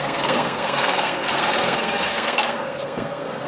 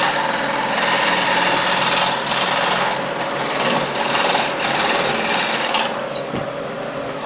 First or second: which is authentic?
second